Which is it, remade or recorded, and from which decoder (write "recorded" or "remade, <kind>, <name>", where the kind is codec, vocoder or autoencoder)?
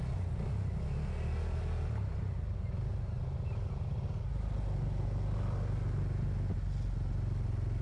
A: recorded